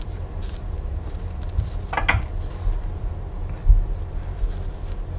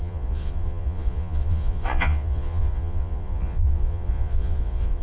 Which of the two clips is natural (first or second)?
first